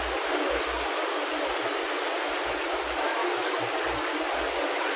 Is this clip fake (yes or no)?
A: no